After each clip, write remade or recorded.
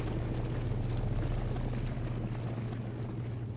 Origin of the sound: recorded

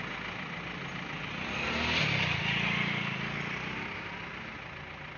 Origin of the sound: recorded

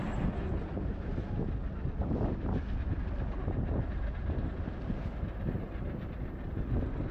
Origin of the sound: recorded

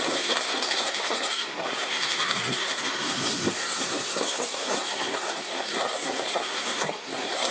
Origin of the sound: remade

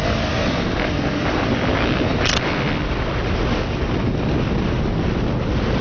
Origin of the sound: recorded